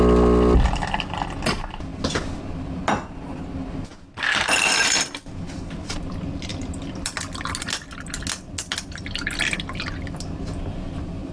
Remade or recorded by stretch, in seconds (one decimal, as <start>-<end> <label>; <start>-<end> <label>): 0.0-11.3 recorded